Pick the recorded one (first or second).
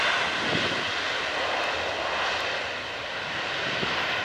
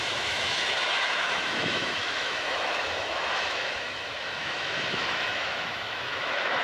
first